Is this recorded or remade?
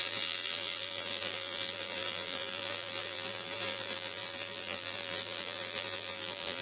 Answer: remade